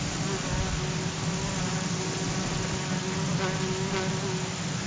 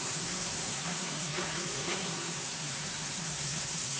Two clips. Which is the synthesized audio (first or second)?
second